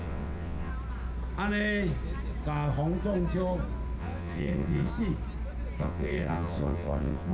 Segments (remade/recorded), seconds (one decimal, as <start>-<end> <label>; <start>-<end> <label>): 0.0-0.7 remade; 0.7-4.0 recorded; 4.0-4.9 remade; 4.9-5.8 recorded; 5.8-7.3 remade